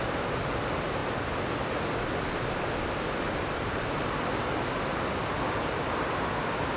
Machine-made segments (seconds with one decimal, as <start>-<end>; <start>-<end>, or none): none